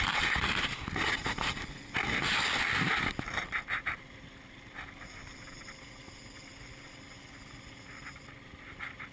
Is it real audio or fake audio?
real